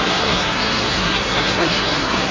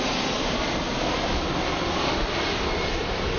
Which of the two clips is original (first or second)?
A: second